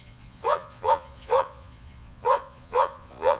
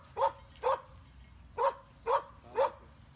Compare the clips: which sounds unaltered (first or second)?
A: second